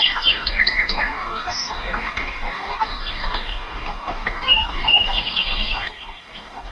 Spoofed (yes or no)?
yes